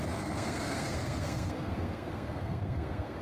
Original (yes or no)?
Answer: no